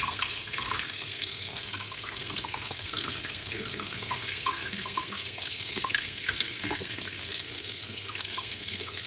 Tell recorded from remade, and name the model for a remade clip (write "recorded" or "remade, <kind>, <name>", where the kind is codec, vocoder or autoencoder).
remade, codec, SNAC